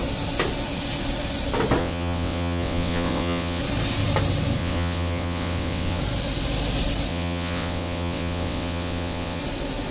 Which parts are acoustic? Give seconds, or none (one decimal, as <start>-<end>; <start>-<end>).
0.0-1.8; 3.6-4.6; 6.0-7.1; 9.4-9.9